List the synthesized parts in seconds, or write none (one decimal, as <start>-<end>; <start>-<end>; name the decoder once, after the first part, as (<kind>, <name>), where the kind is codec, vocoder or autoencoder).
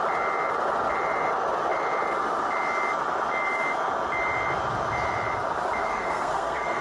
5.8-6.8 (codec, SNAC)